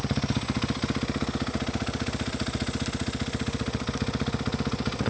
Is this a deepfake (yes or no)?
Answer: no